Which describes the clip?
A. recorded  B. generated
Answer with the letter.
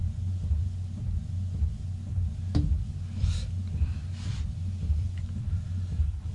A